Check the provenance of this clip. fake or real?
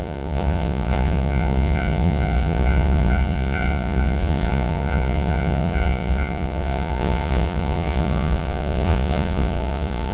fake